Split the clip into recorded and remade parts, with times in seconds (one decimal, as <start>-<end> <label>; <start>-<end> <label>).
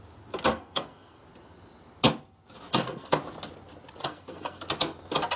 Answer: 0.0-0.5 recorded; 0.5-1.2 remade; 1.2-2.7 recorded; 2.7-3.2 remade; 3.2-4.0 recorded; 4.0-4.6 remade; 4.6-5.4 recorded